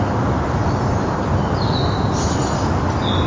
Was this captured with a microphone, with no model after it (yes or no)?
yes